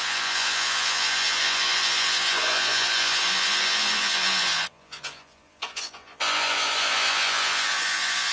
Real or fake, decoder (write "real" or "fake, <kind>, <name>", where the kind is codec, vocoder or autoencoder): fake, vocoder, Vocos